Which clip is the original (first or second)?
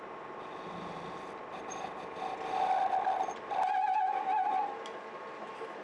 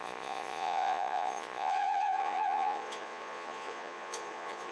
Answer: first